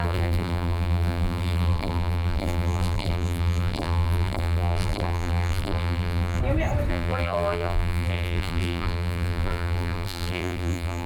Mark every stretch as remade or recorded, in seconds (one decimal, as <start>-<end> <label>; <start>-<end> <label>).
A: 0.0-6.4 remade; 6.4-6.9 recorded; 6.9-11.1 remade